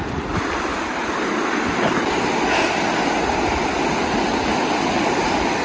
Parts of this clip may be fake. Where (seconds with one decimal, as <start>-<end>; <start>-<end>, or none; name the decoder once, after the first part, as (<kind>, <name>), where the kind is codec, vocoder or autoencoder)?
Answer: none